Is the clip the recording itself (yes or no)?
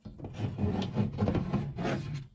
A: yes